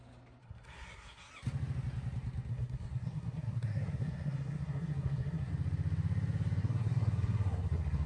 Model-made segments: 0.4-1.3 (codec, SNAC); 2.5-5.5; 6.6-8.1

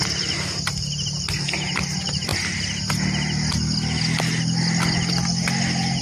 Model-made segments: none